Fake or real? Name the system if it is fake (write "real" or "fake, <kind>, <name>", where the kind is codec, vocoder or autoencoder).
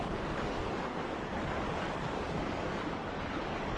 fake, codec, DAC